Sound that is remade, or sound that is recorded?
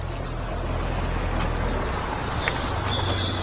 recorded